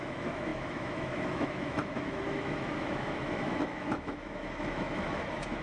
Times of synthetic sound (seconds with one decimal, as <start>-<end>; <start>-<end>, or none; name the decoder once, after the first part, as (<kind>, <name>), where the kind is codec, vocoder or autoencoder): 0.0-5.6 (autoencoder, DAC-VAE)